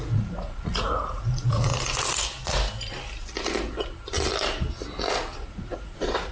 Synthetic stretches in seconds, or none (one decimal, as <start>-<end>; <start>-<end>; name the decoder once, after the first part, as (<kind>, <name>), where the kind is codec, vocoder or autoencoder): 0.0-1.7 (vocoder, Vocos); 5.5-6.3